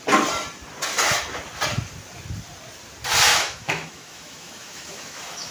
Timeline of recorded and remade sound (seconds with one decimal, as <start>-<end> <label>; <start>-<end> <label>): 0.0-3.3 recorded; 3.3-5.5 remade